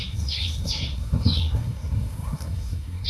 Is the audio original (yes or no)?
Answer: no